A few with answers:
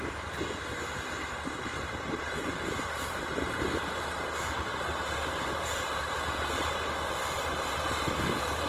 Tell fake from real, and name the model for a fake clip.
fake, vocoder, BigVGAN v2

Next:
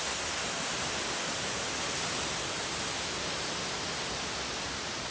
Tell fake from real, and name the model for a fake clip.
real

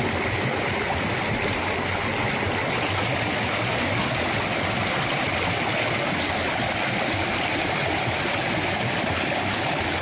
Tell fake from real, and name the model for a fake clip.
real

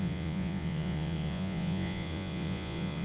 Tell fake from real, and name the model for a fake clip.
fake, vocoder, Vocos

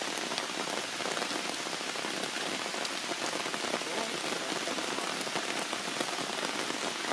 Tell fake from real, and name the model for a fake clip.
real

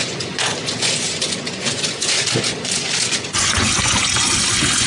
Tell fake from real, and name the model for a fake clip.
fake, vocoder, Vocos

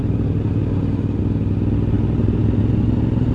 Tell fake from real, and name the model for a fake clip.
real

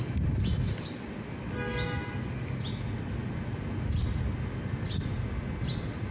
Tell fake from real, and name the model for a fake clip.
real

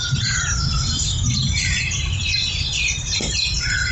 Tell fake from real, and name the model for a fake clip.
fake, vocoder, BigVGAN v2